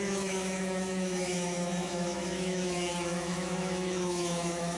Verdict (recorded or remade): remade